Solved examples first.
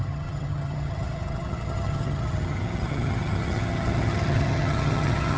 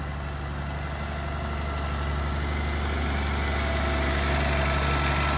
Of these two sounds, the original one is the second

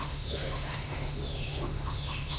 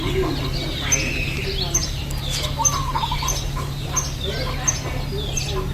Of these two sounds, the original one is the second